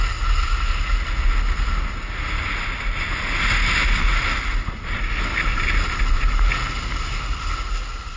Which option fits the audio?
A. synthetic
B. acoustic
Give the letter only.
B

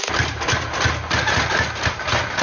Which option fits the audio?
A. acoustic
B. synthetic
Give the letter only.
A